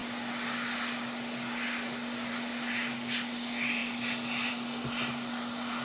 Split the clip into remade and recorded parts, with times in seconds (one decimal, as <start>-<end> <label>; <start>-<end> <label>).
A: 0.0-5.8 recorded